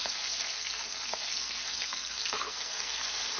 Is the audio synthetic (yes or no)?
yes